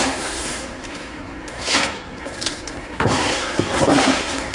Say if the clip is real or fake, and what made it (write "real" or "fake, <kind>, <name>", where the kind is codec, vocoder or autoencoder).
fake, codec, SNAC